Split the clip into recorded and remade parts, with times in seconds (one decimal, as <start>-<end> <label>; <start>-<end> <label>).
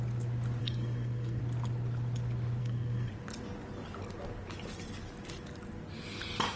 0.0-0.6 recorded; 0.6-1.4 remade; 1.4-2.6 recorded; 2.6-3.1 remade; 3.1-6.6 recorded